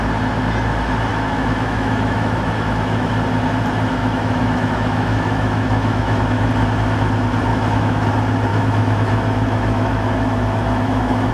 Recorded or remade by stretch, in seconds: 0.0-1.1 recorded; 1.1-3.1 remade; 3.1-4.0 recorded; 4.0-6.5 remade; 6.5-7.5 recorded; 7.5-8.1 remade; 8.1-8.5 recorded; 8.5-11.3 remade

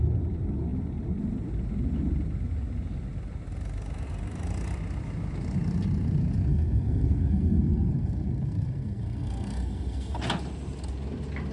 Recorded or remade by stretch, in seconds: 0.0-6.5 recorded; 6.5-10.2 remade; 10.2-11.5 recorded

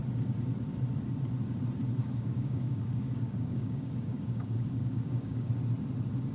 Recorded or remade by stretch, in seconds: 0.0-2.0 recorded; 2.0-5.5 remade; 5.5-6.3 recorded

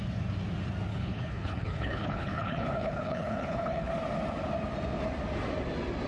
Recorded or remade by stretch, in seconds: 0.0-0.9 recorded; 0.9-3.9 remade; 3.9-6.1 recorded

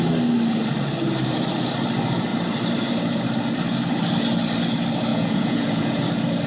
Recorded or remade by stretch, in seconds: 0.0-5.1 recorded; 5.1-6.0 remade; 6.0-6.5 recorded